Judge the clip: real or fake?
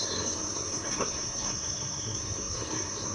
fake